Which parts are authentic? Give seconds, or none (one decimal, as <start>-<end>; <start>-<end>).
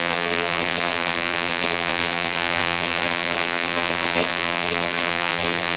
none